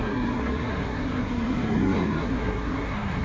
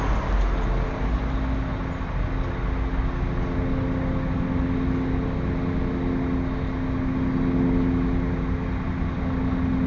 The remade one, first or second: first